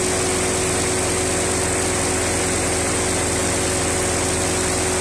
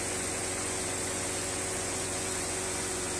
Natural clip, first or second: first